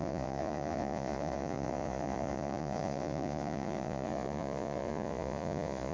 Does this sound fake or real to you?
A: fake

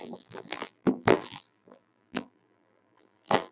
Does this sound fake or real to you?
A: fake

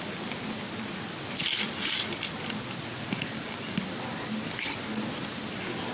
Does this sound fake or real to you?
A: real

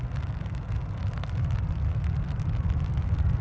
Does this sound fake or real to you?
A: real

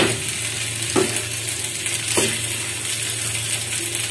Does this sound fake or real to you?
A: real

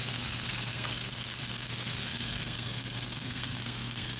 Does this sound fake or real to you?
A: fake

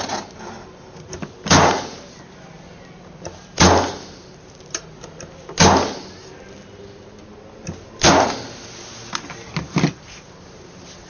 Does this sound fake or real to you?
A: real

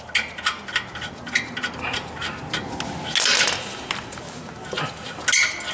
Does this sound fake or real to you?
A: real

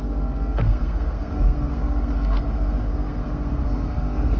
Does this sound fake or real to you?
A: fake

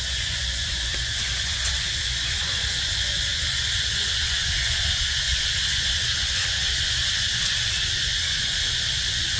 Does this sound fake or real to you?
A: fake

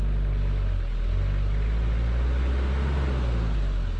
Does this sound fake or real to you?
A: real